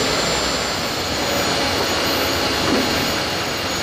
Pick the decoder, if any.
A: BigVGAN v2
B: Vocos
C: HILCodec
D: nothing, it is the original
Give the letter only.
D